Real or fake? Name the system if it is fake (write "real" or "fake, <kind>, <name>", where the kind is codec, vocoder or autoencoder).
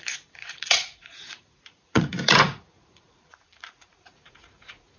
fake, vocoder, Vocos